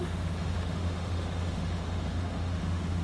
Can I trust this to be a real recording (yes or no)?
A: no